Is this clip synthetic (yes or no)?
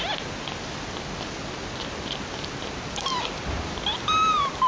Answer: no